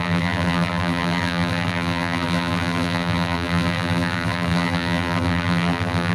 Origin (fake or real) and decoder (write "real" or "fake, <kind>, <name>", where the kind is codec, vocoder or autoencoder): fake, vocoder, BigVGAN v2